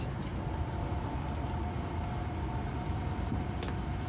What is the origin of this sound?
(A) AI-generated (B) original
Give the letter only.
B